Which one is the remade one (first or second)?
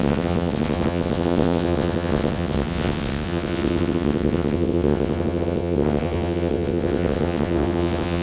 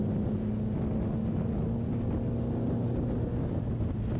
first